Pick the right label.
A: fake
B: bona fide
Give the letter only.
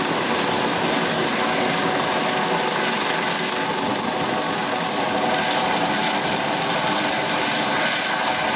B